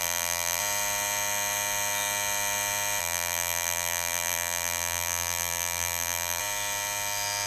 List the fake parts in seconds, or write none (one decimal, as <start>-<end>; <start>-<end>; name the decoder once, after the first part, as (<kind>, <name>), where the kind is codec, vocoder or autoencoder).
0.0-0.6 (vocoder, BigVGAN v2); 3.0-6.4